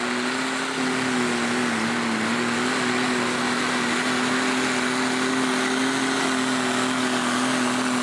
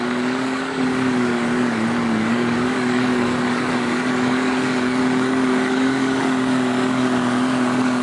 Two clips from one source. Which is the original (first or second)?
first